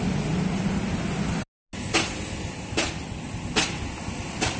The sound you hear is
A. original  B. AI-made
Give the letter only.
A